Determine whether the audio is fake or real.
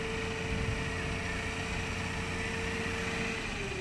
real